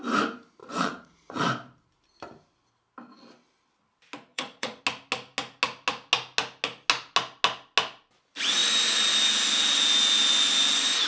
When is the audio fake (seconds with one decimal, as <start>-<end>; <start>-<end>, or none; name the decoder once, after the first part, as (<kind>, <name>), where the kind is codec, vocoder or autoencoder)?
0.6-1.4 (vocoder, Vocos); 4.3-4.8

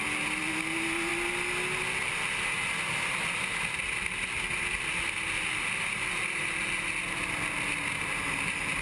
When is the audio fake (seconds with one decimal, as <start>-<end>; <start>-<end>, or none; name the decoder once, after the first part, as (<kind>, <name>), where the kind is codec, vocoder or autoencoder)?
none

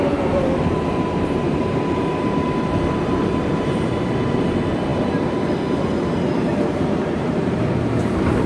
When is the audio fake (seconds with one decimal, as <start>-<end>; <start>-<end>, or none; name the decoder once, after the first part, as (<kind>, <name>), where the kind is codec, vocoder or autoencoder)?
0.0-8.5 (vocoder, BigVGAN v2)

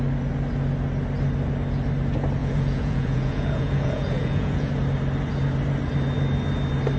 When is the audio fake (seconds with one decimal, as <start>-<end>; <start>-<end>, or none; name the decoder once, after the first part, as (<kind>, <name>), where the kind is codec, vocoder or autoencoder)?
2.4-4.7 (vocoder, Vocos)

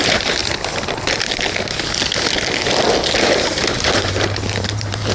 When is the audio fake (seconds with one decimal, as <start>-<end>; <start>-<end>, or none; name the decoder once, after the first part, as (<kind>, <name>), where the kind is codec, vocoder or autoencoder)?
0.0-0.4 (vocoder, BigVGAN v2); 3.2-5.1

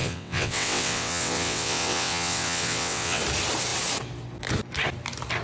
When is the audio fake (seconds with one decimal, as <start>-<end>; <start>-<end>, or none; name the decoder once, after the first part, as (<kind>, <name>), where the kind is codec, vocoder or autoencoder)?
0.0-3.2 (vocoder, WaveNeXt)

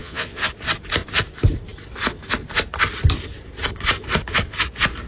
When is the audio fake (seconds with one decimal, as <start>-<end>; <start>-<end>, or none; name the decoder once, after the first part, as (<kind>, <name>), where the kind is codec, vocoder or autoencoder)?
0.0-0.5 (vocoder, Vocos)

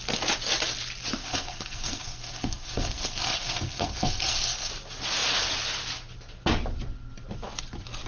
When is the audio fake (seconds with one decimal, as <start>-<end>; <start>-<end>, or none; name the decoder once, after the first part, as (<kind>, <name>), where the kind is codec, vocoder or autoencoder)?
1.2-4.7 (codec, SNAC)